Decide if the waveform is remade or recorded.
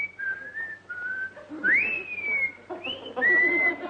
recorded